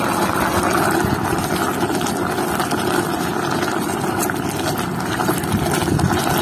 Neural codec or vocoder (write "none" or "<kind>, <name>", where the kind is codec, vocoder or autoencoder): none